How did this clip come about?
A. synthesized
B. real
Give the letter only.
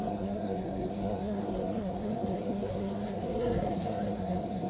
A